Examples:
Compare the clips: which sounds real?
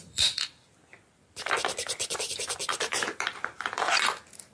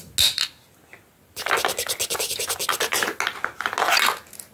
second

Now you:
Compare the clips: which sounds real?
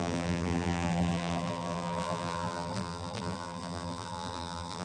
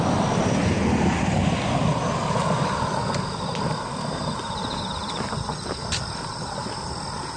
second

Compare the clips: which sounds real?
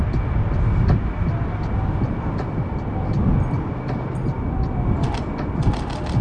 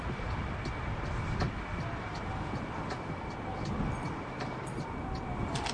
first